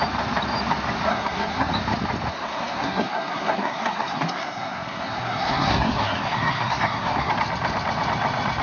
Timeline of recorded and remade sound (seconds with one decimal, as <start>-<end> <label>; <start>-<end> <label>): 0.0-1.1 recorded; 1.1-1.7 remade; 1.7-2.3 recorded; 2.3-7.3 remade; 7.3-8.6 recorded